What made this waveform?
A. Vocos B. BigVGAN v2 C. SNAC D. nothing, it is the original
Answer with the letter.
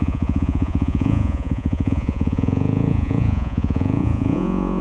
A